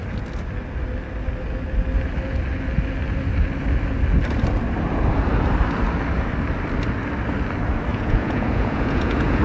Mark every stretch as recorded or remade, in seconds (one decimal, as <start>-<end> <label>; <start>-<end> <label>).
0.0-7.9 recorded; 7.9-9.4 remade